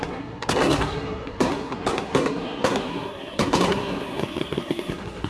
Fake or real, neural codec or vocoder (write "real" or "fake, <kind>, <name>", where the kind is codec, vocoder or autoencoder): fake, codec, SNAC